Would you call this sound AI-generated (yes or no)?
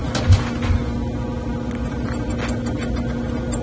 no